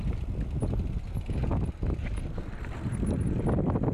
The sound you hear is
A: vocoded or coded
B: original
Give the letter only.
B